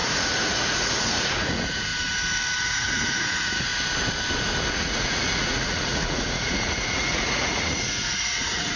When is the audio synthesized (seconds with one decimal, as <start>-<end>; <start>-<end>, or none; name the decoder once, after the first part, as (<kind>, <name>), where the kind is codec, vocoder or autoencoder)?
0.0-1.9 (vocoder, Vocos); 2.7-3.7; 4.7-8.8